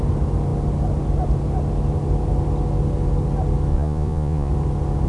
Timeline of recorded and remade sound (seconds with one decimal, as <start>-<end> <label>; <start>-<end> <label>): 0.0-3.7 recorded; 3.7-4.5 remade; 4.5-5.1 recorded